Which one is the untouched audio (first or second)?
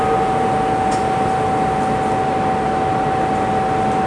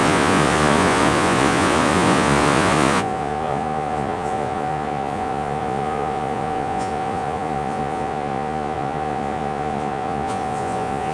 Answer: first